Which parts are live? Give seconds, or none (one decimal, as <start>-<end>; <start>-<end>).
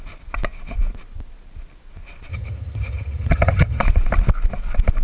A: 0.0-2.3; 3.8-5.0